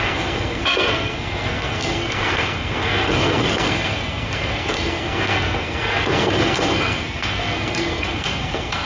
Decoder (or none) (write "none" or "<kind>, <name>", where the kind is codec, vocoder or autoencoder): codec, SNAC